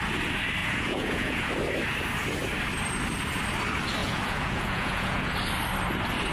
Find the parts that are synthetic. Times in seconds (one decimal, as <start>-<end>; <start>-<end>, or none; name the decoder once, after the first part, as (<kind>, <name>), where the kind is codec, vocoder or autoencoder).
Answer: 0.6-1.5 (vocoder, Vocos); 4.0-5.3